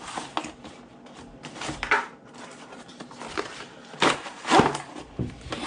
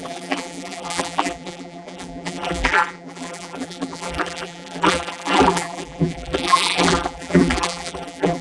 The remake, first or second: second